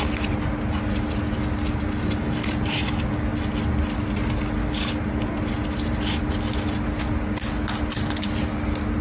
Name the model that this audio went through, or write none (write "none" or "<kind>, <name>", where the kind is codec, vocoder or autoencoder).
none